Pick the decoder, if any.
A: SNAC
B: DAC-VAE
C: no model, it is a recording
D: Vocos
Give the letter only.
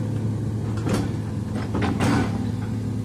C